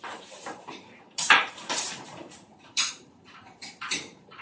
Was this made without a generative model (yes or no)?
no